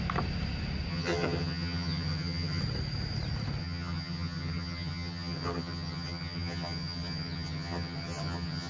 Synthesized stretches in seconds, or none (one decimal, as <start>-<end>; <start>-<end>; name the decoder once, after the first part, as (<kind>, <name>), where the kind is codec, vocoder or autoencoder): 0.9-2.6 (vocoder, HiFi-GAN); 3.6-8.7